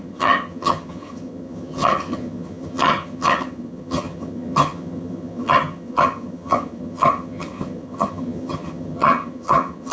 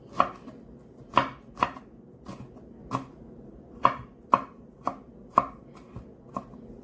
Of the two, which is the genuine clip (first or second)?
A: second